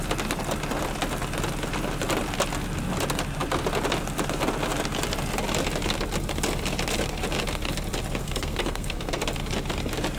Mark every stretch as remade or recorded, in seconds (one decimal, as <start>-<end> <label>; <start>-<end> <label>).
0.0-8.2 recorded; 8.2-9.2 remade; 9.2-10.2 recorded